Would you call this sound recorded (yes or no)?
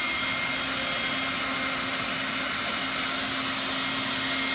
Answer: yes